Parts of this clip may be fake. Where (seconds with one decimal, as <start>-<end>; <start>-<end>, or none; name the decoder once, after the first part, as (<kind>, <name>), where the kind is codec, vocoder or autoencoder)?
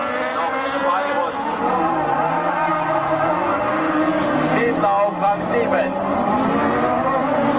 none